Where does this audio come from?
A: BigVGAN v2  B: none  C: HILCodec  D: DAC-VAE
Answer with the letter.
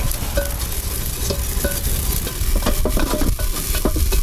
B